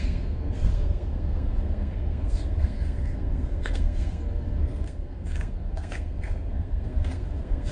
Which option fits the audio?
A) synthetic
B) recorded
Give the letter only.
A